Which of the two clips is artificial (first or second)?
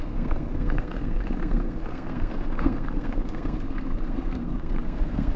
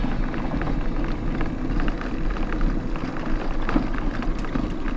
first